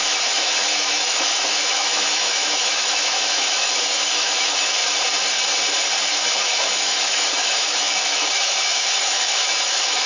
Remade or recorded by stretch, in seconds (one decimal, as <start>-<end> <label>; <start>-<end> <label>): 0.0-4.8 remade; 4.8-6.0 recorded; 6.0-10.1 remade